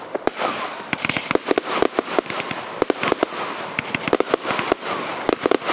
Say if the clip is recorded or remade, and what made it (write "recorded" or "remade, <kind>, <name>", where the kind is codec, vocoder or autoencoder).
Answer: recorded